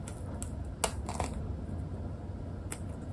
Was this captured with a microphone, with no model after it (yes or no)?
yes